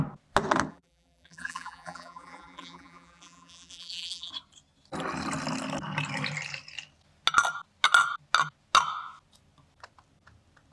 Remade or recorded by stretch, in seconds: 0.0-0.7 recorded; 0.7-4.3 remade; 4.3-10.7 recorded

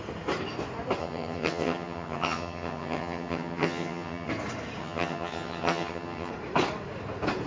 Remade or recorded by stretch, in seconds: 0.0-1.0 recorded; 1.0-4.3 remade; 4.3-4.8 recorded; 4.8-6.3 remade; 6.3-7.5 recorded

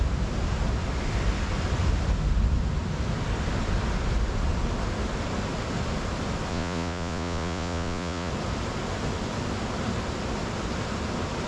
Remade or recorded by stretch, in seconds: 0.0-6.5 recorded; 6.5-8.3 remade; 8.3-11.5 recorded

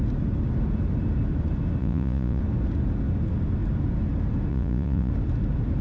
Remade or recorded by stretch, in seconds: 0.0-1.8 recorded; 1.8-2.4 remade; 2.4-4.5 recorded; 4.5-5.1 remade; 5.1-5.8 recorded

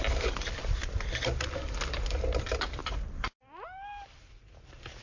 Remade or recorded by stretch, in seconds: 0.0-2.8 recorded; 2.8-4.3 remade; 4.3-5.0 recorded

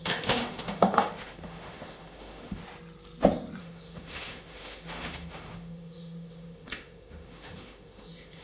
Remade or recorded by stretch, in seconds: 0.0-2.6 remade; 2.6-3.6 recorded; 3.6-8.4 remade

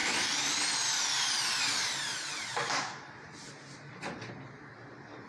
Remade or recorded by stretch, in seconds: 0.0-0.6 remade; 0.6-1.1 recorded; 1.1-4.3 remade; 4.3-5.3 recorded

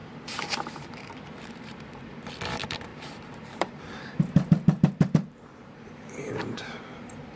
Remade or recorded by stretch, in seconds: 0.0-2.4 remade; 2.4-2.9 recorded; 2.9-6.8 remade; 6.8-7.4 recorded